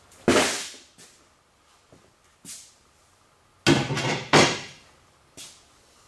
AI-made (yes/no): no